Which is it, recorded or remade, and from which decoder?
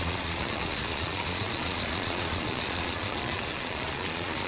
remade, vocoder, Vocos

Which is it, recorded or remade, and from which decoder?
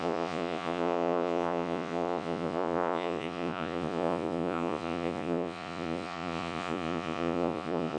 remade, vocoder, Vocos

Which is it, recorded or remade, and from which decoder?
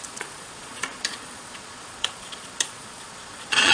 remade, vocoder, Vocos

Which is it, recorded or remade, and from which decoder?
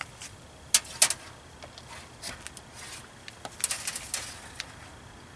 recorded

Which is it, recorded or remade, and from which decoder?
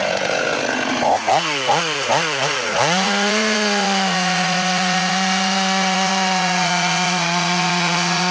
remade, vocoder, Vocos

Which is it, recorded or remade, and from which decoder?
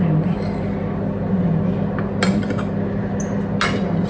recorded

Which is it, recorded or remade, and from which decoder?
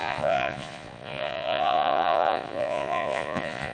remade, vocoder, Vocos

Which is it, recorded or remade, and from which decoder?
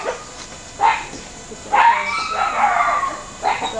recorded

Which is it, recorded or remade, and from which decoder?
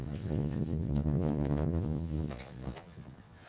remade, vocoder, Vocos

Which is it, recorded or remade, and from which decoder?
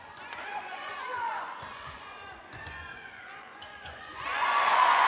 remade, vocoder, Vocos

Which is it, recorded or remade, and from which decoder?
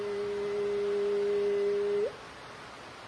recorded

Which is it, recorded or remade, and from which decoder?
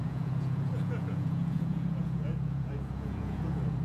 remade, vocoder, Vocos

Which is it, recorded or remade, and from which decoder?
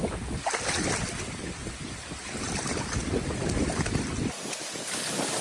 recorded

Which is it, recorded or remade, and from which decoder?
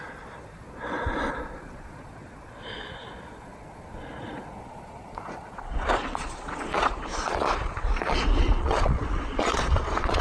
remade, vocoder, Vocos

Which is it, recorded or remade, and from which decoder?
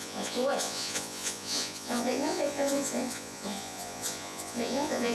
remade, vocoder, Vocos